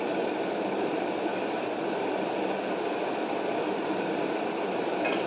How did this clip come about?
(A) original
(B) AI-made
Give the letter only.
A